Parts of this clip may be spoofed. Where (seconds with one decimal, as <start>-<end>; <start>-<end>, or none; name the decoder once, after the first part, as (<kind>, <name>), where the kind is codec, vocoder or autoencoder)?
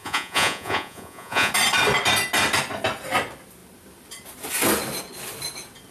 0.0-1.5 (vocoder, Vocos)